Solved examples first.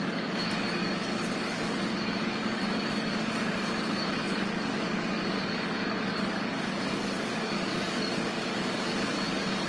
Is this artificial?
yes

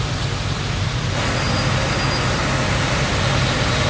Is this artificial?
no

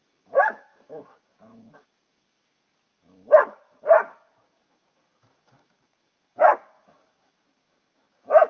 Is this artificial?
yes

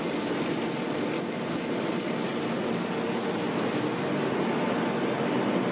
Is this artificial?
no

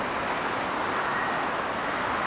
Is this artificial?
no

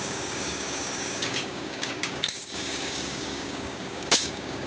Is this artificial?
yes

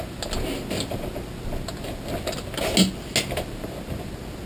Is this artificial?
no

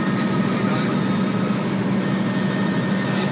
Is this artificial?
no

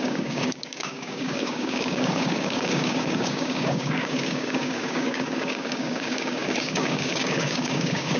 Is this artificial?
yes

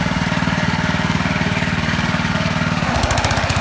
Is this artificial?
yes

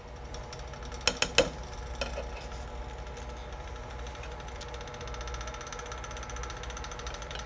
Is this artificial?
no